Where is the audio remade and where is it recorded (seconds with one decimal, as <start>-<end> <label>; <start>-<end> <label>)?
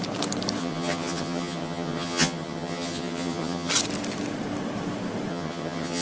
0.0-0.6 recorded; 0.6-3.7 remade; 3.7-5.3 recorded; 5.3-6.0 remade